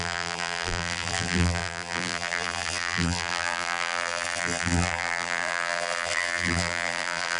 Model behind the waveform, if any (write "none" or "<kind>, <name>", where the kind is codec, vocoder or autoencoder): vocoder, BigVGAN v2